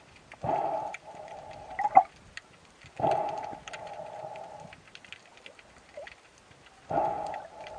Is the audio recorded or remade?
recorded